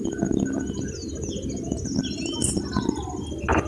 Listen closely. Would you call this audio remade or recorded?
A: recorded